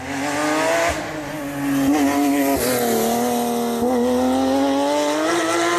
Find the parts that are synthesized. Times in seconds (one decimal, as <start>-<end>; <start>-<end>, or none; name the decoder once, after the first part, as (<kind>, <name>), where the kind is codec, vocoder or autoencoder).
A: none